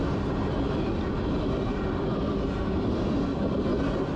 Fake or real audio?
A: real